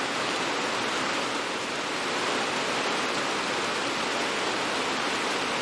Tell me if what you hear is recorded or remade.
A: recorded